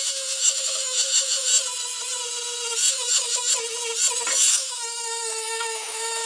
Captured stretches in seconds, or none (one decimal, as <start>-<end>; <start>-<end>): 1.5-2.9; 3.5-4.5